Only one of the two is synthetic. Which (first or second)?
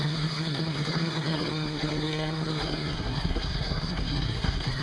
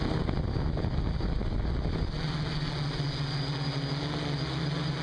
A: first